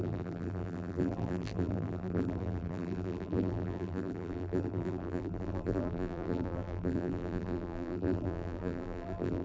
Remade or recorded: remade